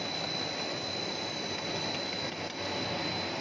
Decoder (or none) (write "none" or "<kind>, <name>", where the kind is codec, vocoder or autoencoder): none